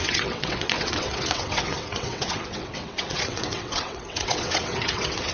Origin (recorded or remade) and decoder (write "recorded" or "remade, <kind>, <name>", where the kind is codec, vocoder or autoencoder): remade, vocoder, WaveNeXt